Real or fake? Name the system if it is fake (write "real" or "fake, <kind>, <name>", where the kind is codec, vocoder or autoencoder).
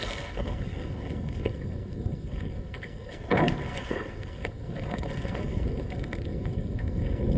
fake, codec, SNAC